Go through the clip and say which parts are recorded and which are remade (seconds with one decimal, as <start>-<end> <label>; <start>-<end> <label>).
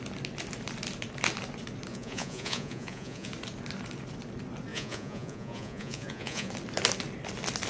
0.0-1.9 recorded; 1.9-3.3 remade; 3.3-4.7 recorded; 4.7-6.5 remade; 6.5-7.7 recorded